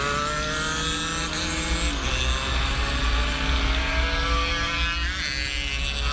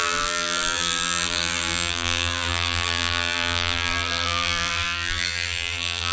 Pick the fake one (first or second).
second